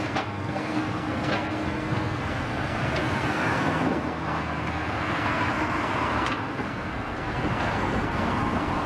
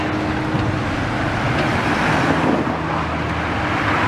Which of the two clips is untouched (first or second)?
second